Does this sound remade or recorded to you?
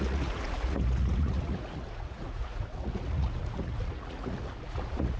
remade